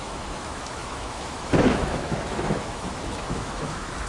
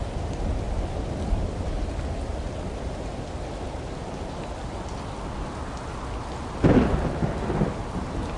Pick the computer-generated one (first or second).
first